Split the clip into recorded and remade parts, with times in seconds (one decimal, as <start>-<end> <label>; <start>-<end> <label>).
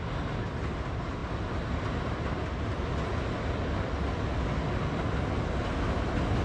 0.0-6.4 recorded